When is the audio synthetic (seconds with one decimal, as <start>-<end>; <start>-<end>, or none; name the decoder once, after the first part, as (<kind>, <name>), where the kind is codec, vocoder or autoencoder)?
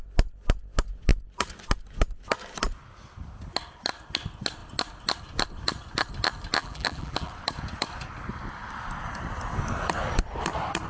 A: 6.6-7.3 (vocoder, BigVGAN v2)